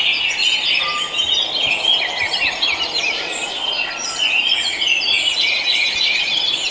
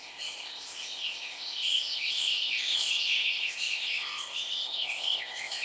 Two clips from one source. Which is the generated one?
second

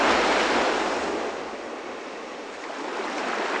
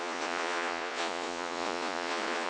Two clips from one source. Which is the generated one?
second